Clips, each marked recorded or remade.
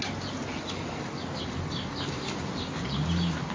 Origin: recorded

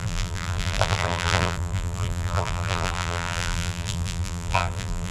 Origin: remade